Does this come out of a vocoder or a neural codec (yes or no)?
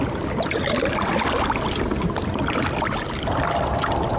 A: no